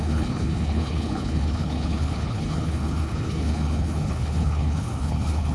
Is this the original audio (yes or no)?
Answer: no